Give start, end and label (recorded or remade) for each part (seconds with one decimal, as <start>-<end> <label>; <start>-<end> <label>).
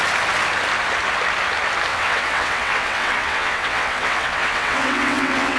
0.0-1.9 recorded; 1.9-5.6 remade